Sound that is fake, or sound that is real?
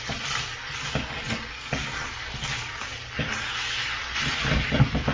real